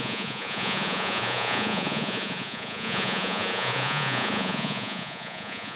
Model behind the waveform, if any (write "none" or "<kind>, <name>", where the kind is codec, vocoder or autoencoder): vocoder, Vocos